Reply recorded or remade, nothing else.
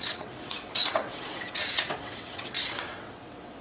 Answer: remade